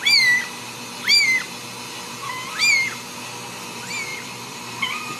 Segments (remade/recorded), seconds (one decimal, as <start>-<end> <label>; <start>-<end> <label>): 0.0-4.1 recorded; 4.1-4.6 remade; 4.6-5.2 recorded